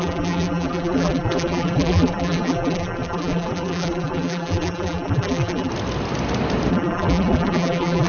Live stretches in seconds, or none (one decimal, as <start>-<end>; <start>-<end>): 5.7-6.7